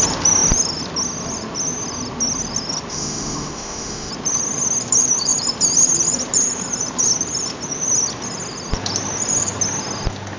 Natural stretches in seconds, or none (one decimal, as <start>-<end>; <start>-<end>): 0.0-2.9; 4.1-10.4